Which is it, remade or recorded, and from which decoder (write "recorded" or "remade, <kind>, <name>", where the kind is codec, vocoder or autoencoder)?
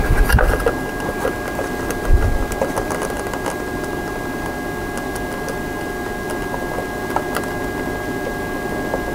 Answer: recorded